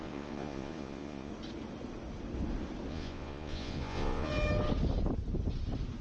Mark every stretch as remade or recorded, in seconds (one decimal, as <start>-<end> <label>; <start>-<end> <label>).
0.0-1.3 remade; 1.3-2.9 recorded; 2.9-4.3 remade; 4.3-6.0 recorded